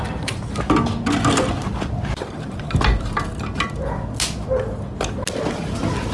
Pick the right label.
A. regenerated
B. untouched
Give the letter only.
B